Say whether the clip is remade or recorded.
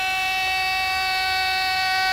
recorded